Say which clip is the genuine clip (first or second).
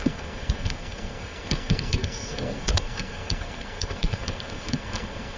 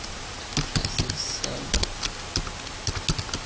second